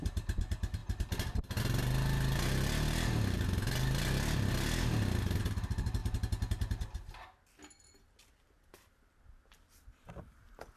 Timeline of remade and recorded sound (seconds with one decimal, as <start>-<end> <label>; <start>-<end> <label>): 0.0-10.8 recorded